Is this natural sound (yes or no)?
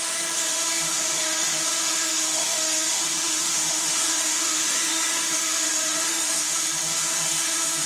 no